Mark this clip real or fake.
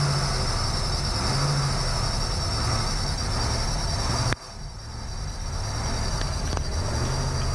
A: real